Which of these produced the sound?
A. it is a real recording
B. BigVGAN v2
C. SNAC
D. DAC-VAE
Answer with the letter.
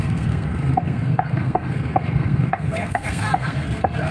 C